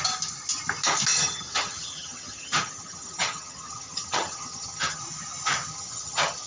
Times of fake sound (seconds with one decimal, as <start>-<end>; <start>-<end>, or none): 1.1-5.0; 5.7-6.5